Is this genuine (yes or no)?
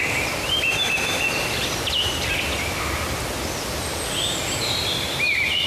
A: yes